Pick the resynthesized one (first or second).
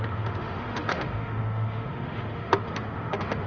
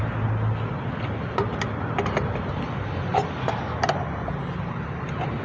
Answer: first